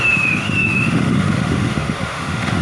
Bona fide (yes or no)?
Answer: no